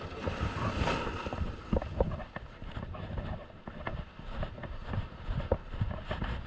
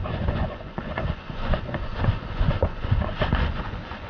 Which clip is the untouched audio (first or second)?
first